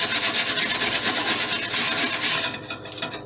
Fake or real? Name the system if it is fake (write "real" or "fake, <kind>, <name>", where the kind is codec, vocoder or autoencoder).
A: real